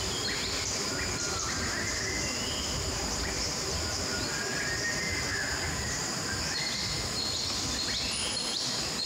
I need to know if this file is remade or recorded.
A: recorded